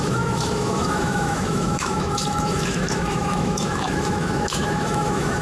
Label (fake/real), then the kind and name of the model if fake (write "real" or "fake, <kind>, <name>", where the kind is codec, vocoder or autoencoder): fake, autoencoder, DAC-VAE